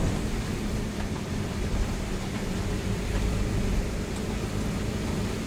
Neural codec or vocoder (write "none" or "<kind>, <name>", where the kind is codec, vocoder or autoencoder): vocoder, BigVGAN v2